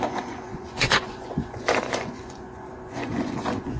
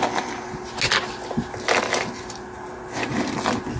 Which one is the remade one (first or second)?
first